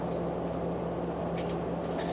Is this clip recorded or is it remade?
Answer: recorded